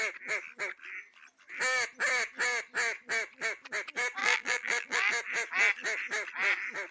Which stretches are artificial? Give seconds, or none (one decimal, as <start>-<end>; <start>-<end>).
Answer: 4.2-5.1